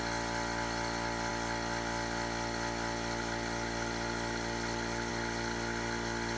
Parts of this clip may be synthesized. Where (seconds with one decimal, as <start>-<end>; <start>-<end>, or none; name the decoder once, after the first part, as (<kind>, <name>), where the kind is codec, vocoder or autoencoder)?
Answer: none